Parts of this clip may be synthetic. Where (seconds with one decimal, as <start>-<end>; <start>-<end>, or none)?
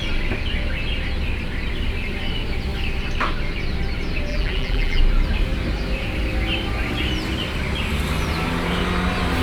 4.3-5.0